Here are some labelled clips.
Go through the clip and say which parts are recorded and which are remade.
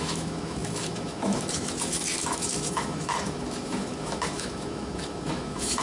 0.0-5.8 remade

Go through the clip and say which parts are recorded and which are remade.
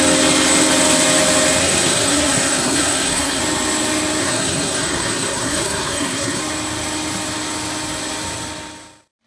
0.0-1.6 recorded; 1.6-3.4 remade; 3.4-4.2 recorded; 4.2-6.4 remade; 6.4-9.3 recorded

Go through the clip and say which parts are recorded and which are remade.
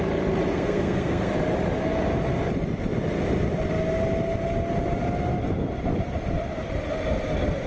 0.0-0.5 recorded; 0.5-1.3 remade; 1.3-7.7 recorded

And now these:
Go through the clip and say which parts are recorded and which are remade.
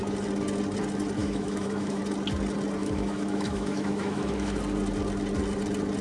0.0-1.2 recorded; 1.2-2.0 remade; 2.0-2.8 recorded; 2.8-4.6 remade; 4.6-6.0 recorded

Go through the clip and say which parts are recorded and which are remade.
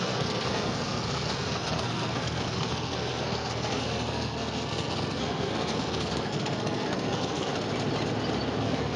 0.0-7.5 remade; 7.5-8.6 recorded; 8.6-9.0 remade